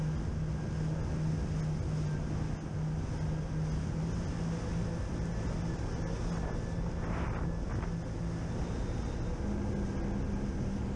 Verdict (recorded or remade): recorded